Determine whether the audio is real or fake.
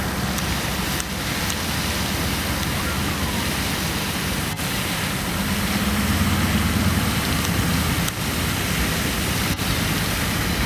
real